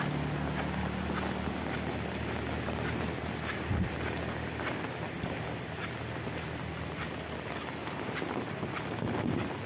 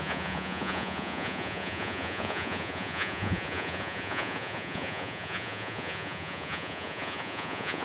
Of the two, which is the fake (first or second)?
second